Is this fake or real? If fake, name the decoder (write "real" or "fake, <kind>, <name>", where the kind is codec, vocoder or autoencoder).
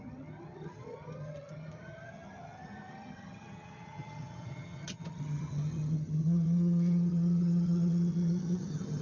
fake, vocoder, HiFi-GAN